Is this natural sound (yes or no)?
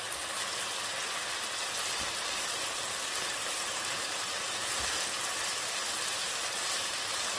yes